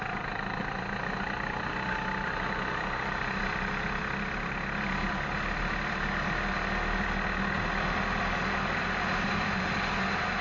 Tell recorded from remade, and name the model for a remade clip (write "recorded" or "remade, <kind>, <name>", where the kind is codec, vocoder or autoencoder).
recorded